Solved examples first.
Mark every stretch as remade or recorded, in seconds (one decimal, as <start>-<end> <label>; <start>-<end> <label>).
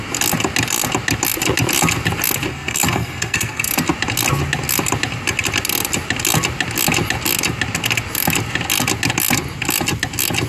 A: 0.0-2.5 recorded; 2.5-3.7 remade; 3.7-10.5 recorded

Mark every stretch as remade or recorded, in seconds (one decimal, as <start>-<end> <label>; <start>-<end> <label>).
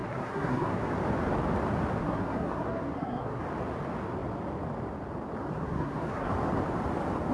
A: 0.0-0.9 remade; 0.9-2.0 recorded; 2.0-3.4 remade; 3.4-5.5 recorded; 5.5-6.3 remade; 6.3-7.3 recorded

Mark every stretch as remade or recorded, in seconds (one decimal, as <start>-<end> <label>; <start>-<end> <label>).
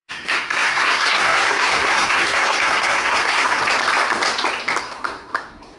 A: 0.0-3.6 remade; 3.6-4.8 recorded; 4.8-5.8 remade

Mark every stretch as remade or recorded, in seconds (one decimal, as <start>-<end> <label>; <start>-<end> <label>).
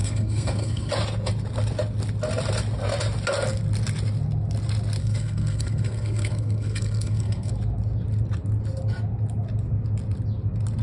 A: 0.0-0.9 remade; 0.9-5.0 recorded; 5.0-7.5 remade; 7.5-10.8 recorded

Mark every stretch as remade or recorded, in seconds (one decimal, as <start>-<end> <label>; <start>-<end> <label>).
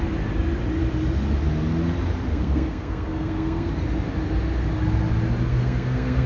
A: 0.0-2.3 recorded; 2.3-3.7 remade; 3.7-5.5 recorded; 5.5-6.3 remade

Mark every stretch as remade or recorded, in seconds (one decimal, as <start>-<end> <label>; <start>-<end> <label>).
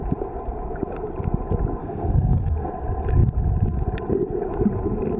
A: 0.0-1.8 recorded; 1.8-2.7 remade; 2.7-5.2 recorded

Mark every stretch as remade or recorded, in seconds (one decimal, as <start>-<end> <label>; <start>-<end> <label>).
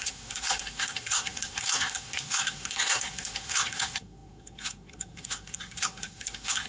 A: 0.0-6.7 remade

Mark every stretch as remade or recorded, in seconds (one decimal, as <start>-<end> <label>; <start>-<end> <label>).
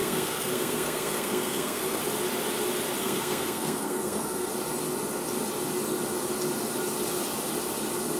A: 0.0-2.0 remade; 2.0-3.0 recorded; 3.0-4.5 remade; 4.5-8.2 recorded